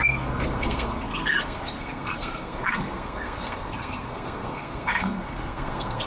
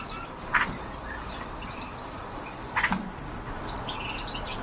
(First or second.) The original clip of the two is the second